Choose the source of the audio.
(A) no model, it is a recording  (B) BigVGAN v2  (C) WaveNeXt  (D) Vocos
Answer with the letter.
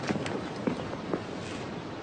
A